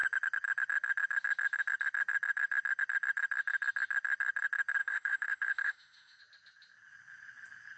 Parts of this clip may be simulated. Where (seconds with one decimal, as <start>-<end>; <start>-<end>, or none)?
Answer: 4.8-6.2